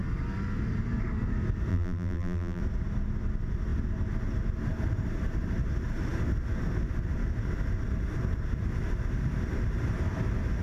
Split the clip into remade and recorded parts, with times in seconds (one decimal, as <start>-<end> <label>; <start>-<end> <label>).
0.0-1.7 recorded; 1.7-2.6 remade; 2.6-10.6 recorded